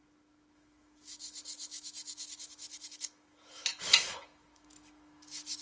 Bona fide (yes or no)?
no